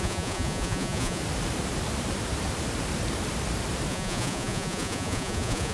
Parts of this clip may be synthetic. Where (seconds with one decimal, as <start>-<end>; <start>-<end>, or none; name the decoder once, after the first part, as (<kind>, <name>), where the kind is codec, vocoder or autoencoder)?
0.0-1.2 (vocoder, Vocos); 3.9-5.7